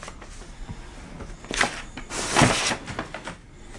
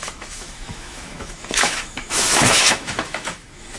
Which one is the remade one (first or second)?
second